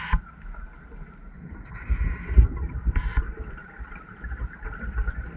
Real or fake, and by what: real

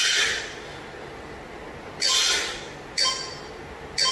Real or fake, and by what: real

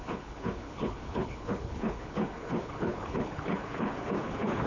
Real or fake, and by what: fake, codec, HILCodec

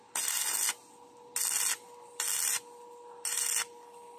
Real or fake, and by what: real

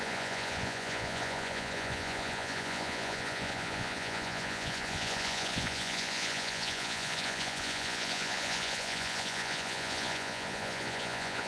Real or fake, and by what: fake, vocoder, Vocos